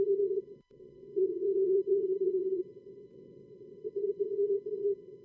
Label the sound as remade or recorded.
remade